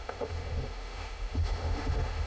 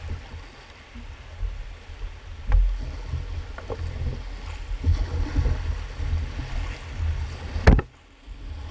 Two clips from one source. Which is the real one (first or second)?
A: second